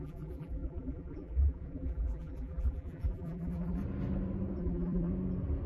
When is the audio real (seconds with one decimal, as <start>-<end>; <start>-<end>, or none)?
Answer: 3.8-4.6; 5.1-5.7